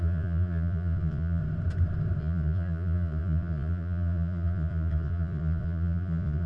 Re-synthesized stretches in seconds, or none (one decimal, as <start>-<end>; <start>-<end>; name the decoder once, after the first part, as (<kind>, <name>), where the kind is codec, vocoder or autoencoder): 0.0-1.4 (vocoder, Vocos); 2.2-6.5